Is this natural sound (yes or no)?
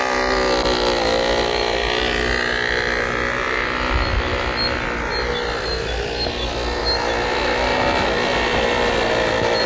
yes